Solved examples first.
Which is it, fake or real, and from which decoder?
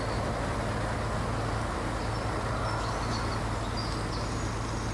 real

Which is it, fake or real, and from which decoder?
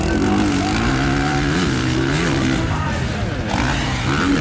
real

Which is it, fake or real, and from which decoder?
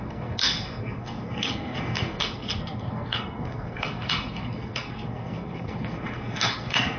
fake, codec, SNAC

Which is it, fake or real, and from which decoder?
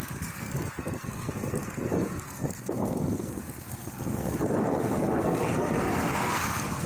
fake, codec, SNAC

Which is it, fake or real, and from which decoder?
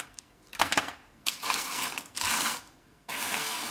fake, codec, SNAC